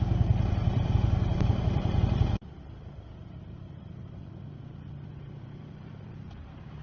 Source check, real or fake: fake